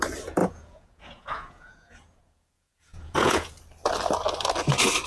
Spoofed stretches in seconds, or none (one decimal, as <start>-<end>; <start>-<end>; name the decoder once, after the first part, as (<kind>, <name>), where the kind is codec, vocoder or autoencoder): 0.4-3.5 (vocoder, Vocos)

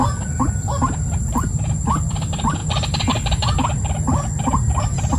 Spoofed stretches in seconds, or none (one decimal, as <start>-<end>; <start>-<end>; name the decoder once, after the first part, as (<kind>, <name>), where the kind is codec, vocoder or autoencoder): none

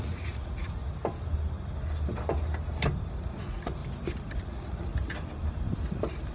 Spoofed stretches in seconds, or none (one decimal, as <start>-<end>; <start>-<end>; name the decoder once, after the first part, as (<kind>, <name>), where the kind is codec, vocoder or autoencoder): 0.0-0.8 (vocoder, Vocos); 3.4-3.8; 4.4-4.9

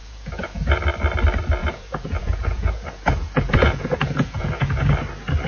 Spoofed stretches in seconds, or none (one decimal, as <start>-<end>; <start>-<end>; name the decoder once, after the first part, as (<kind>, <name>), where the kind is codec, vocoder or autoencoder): 0.0-0.8 (vocoder, Vocos); 1.6-4.9

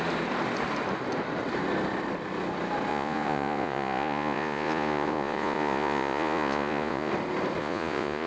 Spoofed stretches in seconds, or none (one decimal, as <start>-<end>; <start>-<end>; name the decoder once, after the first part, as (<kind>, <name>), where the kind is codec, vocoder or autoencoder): 2.9-7.1 (vocoder, Vocos); 7.6-8.3